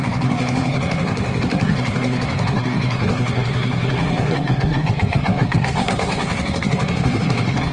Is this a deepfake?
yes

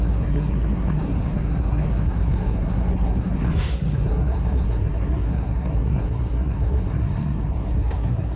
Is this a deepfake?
yes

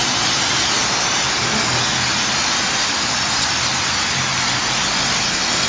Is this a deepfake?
no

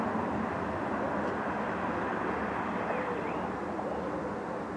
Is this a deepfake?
no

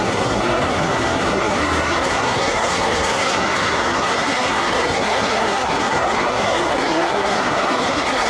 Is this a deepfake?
yes